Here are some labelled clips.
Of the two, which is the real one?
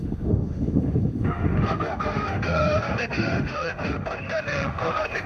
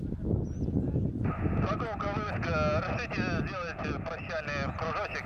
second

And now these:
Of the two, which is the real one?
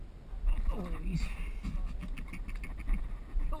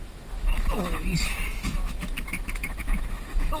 first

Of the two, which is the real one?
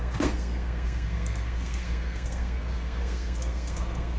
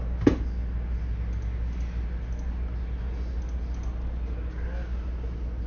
second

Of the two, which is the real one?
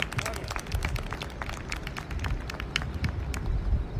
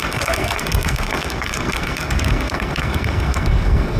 first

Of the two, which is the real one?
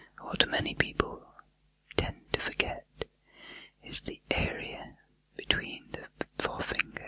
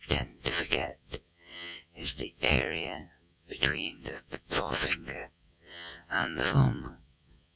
first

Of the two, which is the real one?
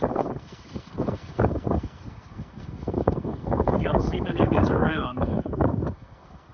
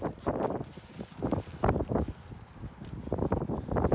second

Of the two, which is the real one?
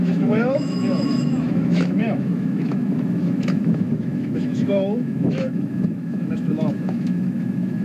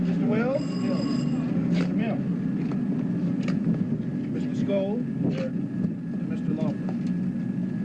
second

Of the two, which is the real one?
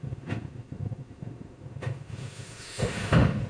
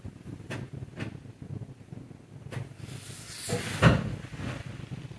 second